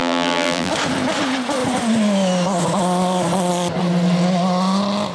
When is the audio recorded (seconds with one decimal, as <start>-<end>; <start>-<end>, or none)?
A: 0.7-5.1